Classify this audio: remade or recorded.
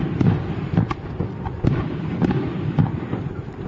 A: remade